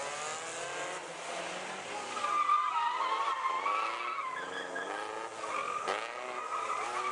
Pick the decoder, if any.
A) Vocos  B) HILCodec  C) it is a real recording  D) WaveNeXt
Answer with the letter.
C